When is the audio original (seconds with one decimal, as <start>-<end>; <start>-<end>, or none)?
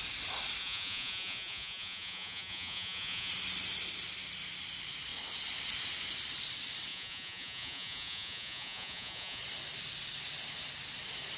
0.0-0.6; 3.3-6.9; 9.4-11.4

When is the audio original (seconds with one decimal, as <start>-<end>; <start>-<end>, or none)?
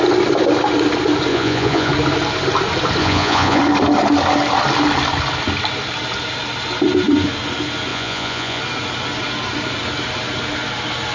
0.0-1.3; 1.9-3.0; 3.6-7.9; 8.6-11.1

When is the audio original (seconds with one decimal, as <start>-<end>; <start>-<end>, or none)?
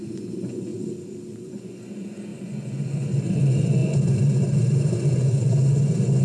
0.7-1.3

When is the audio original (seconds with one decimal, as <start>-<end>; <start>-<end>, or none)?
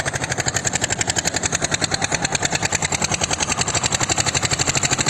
0.0-5.1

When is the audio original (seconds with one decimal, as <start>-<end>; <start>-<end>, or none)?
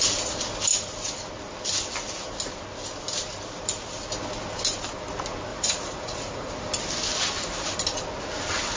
0.0-5.5; 6.5-8.8